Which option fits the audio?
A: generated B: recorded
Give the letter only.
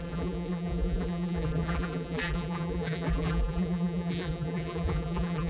A